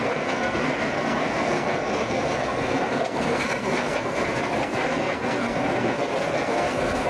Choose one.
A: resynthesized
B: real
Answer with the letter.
A